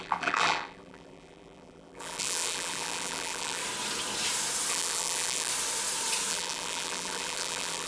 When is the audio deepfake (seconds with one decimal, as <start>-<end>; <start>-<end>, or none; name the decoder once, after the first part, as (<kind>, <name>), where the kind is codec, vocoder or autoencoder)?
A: 0.0-3.6 (vocoder, BigVGAN v2); 4.7-5.5; 6.3-7.9